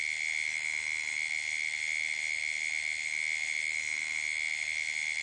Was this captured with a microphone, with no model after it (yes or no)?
yes